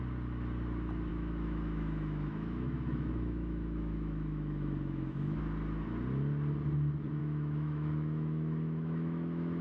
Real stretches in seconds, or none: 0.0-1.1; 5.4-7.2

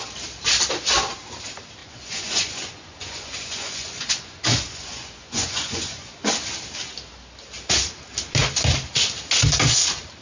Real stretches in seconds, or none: 0.0-1.8; 6.3-10.2

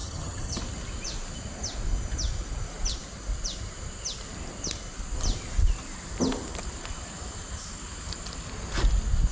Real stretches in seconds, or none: 0.6-9.3

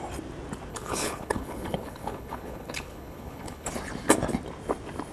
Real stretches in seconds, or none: 0.0-0.7; 3.7-5.1